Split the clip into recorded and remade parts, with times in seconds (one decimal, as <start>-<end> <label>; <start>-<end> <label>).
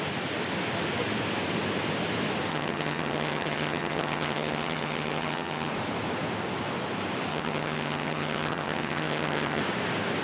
0.0-2.5 recorded; 2.5-5.7 remade; 5.7-7.3 recorded; 7.3-9.6 remade; 9.6-10.2 recorded